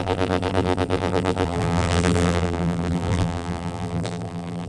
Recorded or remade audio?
remade